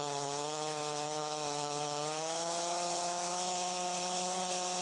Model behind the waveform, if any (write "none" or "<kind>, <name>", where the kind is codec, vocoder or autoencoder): codec, HILCodec